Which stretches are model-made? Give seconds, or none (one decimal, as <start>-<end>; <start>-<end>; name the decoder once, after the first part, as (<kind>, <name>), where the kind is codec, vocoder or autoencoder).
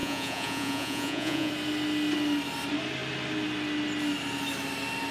0.0-1.5 (vocoder, Vocos)